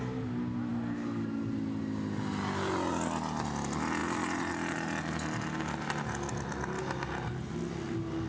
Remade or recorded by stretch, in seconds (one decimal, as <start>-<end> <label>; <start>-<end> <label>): 0.0-8.3 recorded